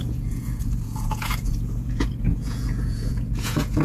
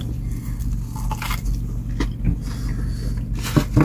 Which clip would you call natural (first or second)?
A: second